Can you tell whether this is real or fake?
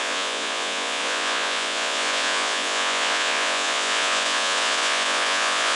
fake